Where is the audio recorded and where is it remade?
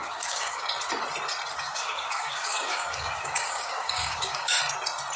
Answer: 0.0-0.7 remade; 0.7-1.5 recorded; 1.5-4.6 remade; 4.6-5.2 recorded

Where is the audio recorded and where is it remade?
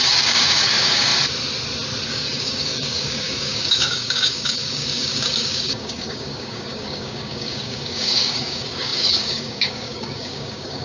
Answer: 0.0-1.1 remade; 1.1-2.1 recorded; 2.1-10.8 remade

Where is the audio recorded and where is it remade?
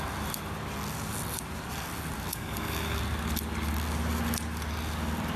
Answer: 0.0-2.3 recorded; 2.3-3.0 remade; 3.0-5.4 recorded